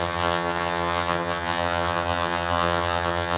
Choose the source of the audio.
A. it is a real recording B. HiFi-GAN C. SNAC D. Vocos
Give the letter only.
B